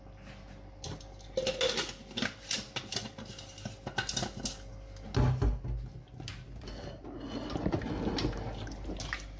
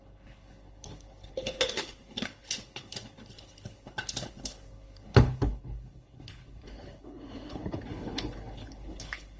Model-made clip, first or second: second